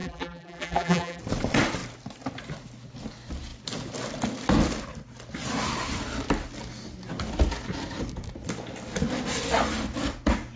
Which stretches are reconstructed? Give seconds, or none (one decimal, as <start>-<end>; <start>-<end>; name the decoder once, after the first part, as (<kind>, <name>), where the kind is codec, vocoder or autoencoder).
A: 0.0-1.2 (vocoder, BigVGAN v2)